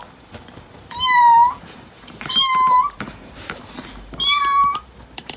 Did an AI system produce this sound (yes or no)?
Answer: yes